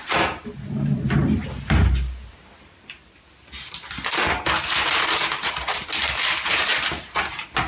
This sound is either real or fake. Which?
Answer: real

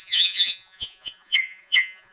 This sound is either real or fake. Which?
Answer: fake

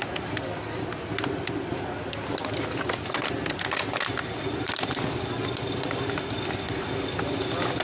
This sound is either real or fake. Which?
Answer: real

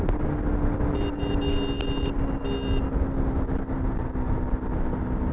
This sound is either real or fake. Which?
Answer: real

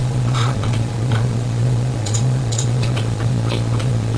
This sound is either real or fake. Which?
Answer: fake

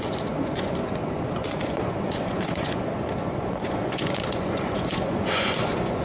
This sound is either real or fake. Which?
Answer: fake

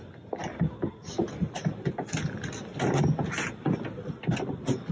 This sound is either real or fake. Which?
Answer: real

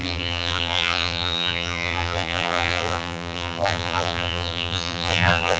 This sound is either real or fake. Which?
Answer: fake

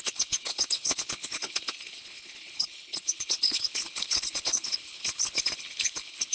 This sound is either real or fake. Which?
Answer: fake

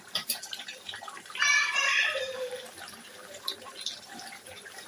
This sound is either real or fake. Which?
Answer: fake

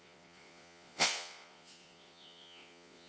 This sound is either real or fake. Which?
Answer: fake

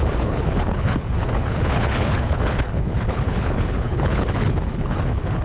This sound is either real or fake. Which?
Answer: fake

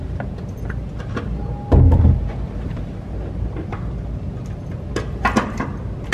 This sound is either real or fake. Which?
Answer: real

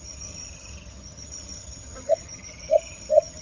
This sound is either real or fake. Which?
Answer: fake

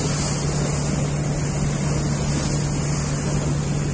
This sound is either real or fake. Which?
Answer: real